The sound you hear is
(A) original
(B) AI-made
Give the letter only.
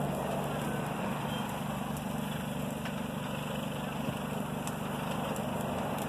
A